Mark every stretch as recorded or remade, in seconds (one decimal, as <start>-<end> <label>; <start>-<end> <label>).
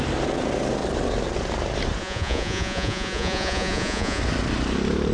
0.0-2.0 recorded; 2.0-4.2 remade; 4.2-5.1 recorded